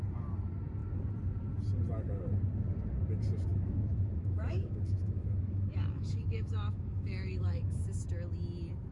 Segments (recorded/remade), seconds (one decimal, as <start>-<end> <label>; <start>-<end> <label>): 0.0-3.5 recorded; 3.5-7.8 remade; 7.8-8.9 recorded